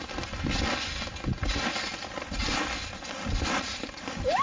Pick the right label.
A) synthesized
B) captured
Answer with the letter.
B